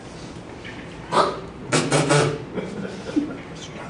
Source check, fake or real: real